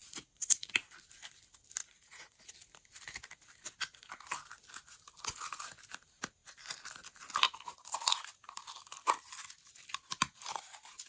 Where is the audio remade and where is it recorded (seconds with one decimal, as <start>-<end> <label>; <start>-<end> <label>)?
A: 0.0-0.7 remade; 0.7-1.8 recorded; 1.8-2.5 remade; 2.5-11.1 recorded